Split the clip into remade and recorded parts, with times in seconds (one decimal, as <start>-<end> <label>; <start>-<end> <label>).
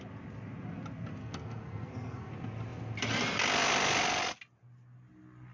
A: 0.0-1.2 recorded; 1.2-2.3 remade; 2.3-5.5 recorded